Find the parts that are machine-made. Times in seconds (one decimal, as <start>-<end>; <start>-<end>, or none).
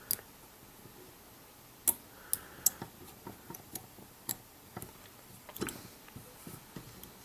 3.0-5.6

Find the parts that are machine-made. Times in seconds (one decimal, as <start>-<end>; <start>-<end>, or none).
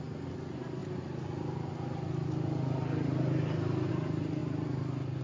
none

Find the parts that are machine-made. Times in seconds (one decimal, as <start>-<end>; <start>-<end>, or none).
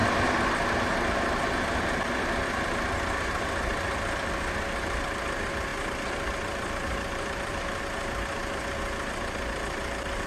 5.7-7.8